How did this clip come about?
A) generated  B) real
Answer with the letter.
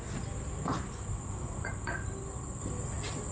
B